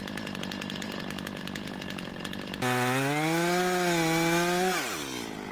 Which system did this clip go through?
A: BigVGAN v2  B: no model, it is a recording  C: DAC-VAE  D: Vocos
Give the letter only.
B